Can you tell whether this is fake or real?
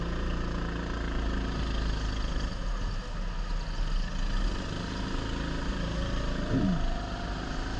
real